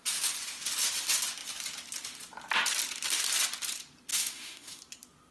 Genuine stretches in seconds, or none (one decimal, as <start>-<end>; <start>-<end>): 0.0-4.1; 4.8-5.3